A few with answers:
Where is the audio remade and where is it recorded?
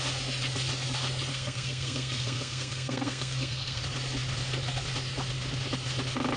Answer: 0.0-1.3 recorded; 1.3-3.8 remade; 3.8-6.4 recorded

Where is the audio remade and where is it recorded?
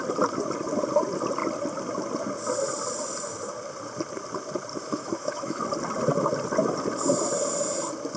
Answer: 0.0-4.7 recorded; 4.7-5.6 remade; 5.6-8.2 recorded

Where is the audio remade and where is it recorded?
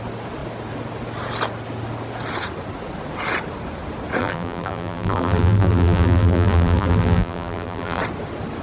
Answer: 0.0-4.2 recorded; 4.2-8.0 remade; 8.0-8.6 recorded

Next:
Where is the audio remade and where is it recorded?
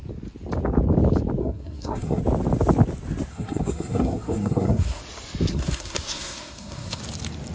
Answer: 0.0-1.4 recorded; 1.4-2.2 remade; 2.2-3.3 recorded; 3.3-5.0 remade; 5.0-5.5 recorded; 5.5-7.0 remade; 7.0-7.5 recorded